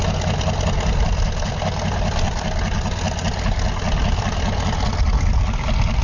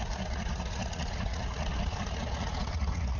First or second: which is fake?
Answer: second